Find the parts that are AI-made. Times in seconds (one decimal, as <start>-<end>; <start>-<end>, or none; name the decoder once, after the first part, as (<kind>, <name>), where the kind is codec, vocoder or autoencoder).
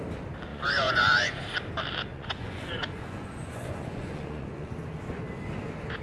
0.5-1.4 (vocoder, Vocos); 2.1-4.7